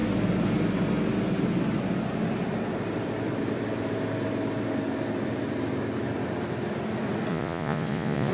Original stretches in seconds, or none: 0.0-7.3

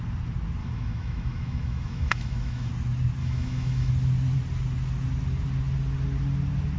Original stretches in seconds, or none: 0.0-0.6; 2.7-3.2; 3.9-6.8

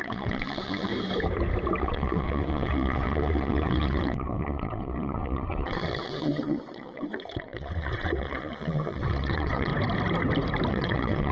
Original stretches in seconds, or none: 0.9-1.8; 9.7-10.7

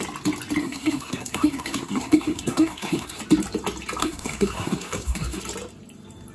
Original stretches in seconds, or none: 0.0-0.6; 3.2-4.0; 5.4-6.3

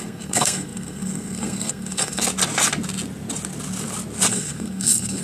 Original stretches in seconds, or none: 2.2-4.3

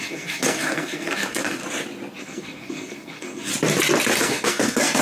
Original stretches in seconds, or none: 1.6-2.2; 3.5-4.2